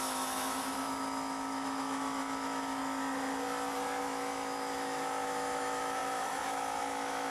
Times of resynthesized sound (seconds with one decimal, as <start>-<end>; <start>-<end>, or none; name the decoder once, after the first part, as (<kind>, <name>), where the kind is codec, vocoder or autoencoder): 0.0-2.8 (autoencoder, DAC-VAE); 4.0-7.3